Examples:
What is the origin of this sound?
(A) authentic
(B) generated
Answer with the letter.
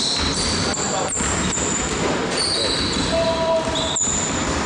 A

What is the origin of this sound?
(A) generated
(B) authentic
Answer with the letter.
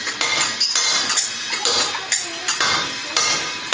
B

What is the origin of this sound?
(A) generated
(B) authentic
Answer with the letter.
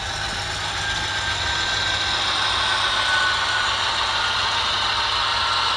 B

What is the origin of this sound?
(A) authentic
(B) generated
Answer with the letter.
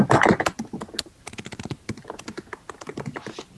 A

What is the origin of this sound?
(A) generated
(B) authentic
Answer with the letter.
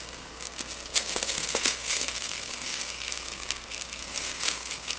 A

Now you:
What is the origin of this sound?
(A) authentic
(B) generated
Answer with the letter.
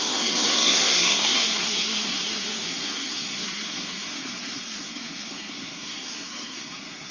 B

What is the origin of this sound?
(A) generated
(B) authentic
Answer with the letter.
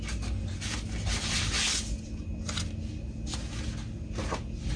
B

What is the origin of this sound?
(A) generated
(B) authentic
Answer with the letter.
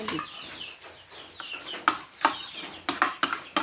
B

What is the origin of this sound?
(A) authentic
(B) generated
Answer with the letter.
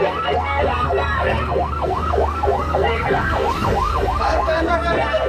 B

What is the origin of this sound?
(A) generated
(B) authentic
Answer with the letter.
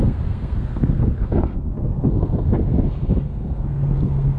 A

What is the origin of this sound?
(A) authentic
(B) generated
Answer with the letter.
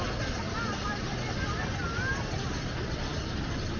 A